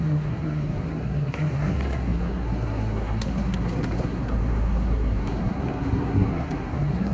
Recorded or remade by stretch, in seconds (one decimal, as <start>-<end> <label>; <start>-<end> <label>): 0.0-7.1 remade

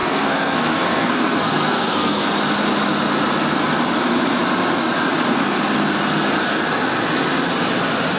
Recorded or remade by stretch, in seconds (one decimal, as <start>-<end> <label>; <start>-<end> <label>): 0.0-2.3 remade; 2.3-8.2 recorded